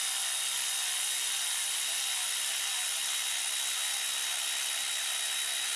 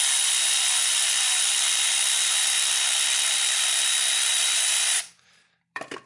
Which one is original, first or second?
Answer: first